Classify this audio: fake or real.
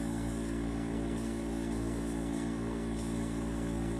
fake